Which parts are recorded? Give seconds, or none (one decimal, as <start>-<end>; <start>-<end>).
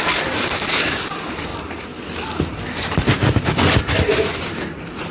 1.5-4.6